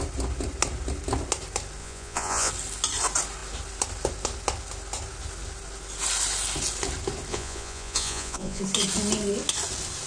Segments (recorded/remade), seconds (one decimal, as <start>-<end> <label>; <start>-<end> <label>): 0.0-1.8 recorded; 1.8-2.5 remade; 2.5-7.3 recorded; 7.3-8.6 remade; 8.6-10.1 recorded